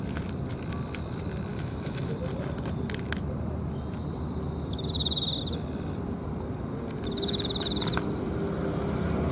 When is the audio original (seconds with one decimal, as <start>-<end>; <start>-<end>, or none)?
0.0-1.5; 2.1-9.3